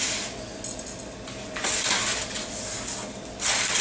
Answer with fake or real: real